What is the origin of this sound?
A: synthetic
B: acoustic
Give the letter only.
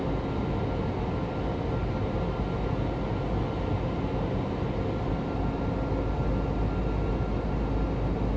B